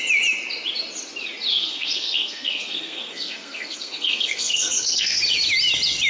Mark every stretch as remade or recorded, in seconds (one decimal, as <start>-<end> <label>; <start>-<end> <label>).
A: 0.0-1.5 recorded; 1.5-5.2 remade; 5.2-6.1 recorded